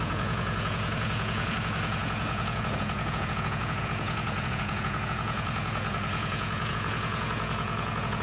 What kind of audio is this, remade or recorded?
remade